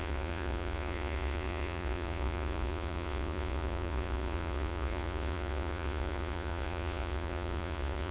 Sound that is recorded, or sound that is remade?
remade